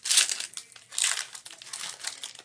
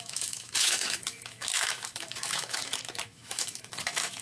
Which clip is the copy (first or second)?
second